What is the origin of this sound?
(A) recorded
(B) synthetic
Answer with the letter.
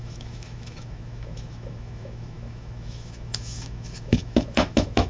B